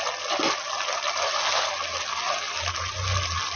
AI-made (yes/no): no